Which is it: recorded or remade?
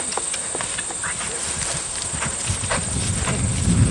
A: recorded